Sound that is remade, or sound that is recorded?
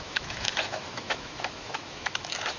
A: remade